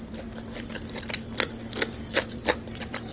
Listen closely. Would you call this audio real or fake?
real